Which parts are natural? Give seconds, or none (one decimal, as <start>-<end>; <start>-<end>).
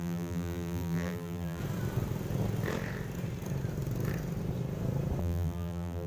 1.6-5.2